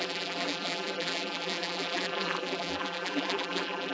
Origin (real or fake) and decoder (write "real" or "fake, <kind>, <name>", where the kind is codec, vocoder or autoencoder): fake, vocoder, BigVGAN v2